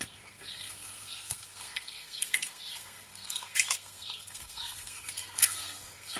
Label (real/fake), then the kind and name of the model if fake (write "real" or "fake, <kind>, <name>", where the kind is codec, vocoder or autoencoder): fake, codec, SNAC